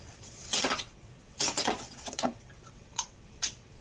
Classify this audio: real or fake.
fake